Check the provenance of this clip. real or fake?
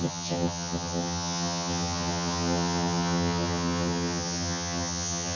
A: fake